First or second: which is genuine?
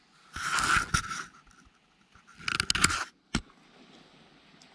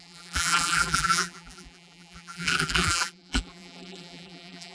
first